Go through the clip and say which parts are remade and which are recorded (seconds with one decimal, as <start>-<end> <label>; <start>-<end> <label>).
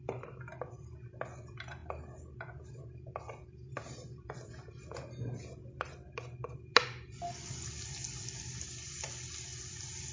0.0-10.1 recorded